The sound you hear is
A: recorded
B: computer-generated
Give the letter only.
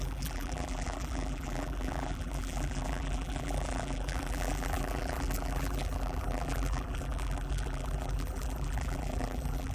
B